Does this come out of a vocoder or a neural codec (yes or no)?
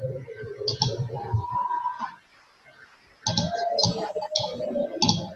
no